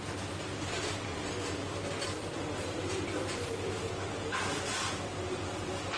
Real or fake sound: real